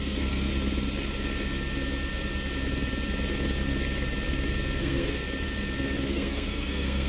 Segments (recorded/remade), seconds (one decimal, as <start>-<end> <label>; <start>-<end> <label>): 0.0-0.5 remade; 0.5-4.8 recorded; 4.8-5.2 remade; 5.2-6.1 recorded; 6.1-7.1 remade